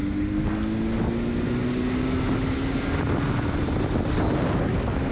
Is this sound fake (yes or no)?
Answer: no